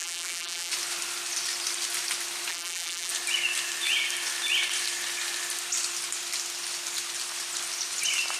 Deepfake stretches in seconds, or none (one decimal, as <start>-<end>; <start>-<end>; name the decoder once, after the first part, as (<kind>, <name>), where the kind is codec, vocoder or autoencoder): 0.0-0.7 (vocoder, BigVGAN v2); 2.5-3.1